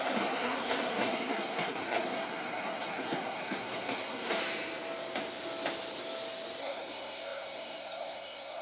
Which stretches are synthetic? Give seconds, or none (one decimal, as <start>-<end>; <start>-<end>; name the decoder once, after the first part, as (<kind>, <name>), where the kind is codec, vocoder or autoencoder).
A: 0.0-4.4 (codec, SNAC); 6.6-8.6

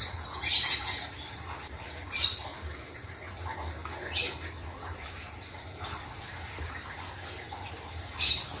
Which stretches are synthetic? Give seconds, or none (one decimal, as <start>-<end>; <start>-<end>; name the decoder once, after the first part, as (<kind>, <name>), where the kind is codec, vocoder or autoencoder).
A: none

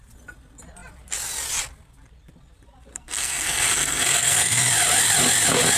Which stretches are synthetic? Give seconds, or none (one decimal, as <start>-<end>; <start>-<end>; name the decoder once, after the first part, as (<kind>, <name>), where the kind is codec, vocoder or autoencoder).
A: 2.9-4.6 (codec, SNAC)

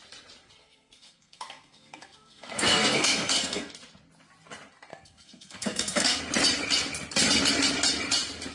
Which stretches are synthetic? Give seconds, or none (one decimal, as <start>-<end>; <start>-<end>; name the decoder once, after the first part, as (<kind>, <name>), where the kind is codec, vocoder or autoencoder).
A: 0.6-3.7 (codec, SNAC); 4.9-6.2

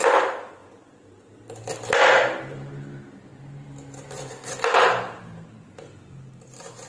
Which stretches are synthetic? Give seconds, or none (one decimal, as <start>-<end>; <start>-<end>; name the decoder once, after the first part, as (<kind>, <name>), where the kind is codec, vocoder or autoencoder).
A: none

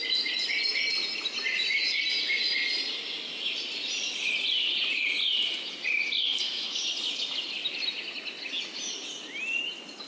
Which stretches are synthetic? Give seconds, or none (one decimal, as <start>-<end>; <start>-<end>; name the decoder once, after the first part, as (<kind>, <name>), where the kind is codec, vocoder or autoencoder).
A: 6.2-6.8 (codec, SNAC)